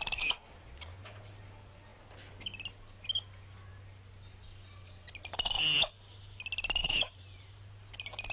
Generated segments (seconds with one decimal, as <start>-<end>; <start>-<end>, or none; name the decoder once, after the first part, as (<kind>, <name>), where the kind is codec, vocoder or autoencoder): 6.8-7.5 (vocoder, BigVGAN v2)